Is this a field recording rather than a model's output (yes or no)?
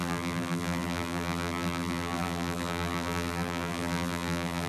no